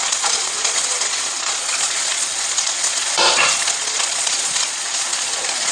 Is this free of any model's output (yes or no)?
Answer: no